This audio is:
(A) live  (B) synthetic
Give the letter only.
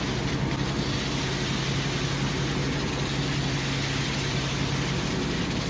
A